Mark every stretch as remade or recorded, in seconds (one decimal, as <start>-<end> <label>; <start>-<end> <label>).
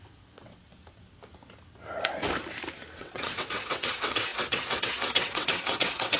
0.0-0.6 remade; 0.6-3.0 recorded; 3.0-6.2 remade